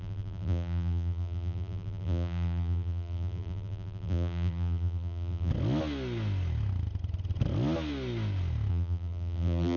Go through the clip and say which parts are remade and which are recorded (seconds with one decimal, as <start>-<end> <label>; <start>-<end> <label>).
0.0-5.5 remade; 5.5-8.7 recorded; 8.7-9.8 remade